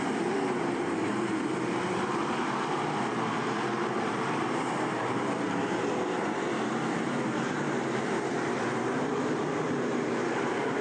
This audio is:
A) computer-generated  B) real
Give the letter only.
A